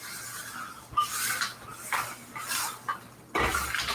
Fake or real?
real